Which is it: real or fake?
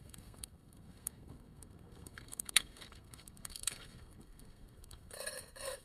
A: fake